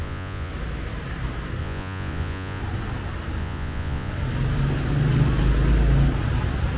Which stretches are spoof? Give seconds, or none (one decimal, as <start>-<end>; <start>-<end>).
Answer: 0.0-0.5; 1.6-2.6; 3.4-4.1